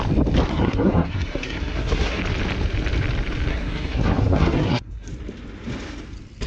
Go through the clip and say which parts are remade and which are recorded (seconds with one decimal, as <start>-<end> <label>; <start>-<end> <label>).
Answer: 0.0-0.5 recorded; 0.5-2.2 remade; 2.2-3.5 recorded; 3.5-5.1 remade; 5.1-6.5 recorded